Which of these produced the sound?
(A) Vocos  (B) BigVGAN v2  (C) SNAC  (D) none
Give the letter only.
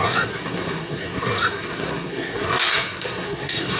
C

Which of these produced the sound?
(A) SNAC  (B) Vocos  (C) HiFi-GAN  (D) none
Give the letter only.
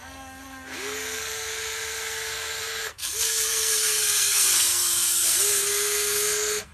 A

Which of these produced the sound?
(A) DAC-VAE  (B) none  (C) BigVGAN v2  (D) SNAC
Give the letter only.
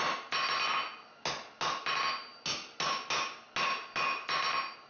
B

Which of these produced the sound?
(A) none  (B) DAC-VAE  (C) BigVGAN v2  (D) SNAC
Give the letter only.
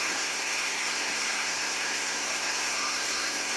D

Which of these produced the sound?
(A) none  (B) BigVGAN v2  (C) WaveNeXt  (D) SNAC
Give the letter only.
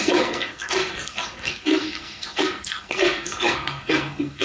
D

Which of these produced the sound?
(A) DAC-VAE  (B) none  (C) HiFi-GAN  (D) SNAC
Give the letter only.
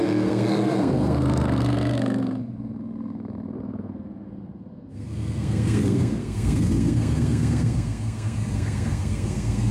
D